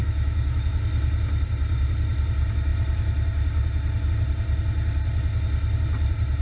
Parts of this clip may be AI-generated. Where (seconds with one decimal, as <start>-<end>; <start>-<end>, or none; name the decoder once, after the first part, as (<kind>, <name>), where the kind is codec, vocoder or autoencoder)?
0.0-0.7 (autoencoder, DAC-VAE)